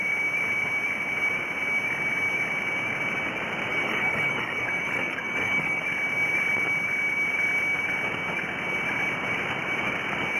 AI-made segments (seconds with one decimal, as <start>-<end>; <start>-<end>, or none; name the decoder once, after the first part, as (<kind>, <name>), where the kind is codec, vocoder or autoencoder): 3.7-5.8 (codec, DAC)

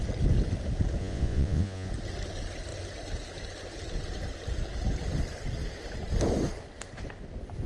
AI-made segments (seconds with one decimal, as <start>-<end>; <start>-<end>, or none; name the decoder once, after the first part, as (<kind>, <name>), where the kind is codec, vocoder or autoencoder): 1.0-1.9 (vocoder, Vocos)

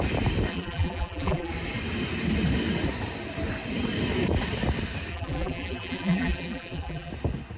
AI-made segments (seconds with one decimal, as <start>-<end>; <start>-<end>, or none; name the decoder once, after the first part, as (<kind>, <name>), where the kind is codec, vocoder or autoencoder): 0.5-1.5 (vocoder, BigVGAN v2); 5.1-7.1

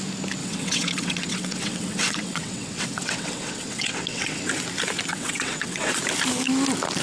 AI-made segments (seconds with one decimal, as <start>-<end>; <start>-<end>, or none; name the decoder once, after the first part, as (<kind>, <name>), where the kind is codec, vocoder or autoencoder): 0.4-4.4 (vocoder, WaveNeXt); 5.1-6.0

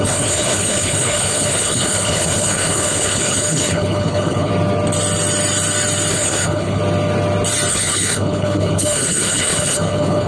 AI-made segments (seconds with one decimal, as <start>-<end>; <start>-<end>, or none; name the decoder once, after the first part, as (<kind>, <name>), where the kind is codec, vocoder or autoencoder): 0.0-4.5 (codec, HILCodec); 6.1-6.8; 7.7-10.3

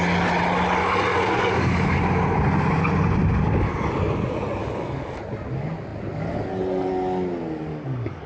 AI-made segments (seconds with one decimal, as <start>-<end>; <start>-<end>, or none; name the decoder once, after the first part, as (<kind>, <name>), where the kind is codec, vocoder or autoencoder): 1.1-2.0 (codec, DAC); 4.6-5.2; 7.7-8.3